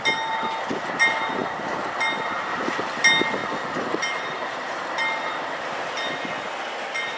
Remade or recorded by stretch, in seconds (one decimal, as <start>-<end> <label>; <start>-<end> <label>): 0.0-7.2 recorded